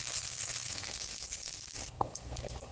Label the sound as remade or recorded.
remade